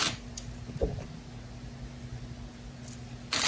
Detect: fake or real real